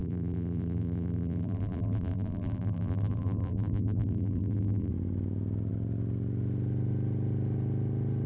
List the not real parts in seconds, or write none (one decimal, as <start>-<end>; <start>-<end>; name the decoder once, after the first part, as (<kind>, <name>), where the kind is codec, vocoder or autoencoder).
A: 0.0-4.9 (vocoder, BigVGAN v2)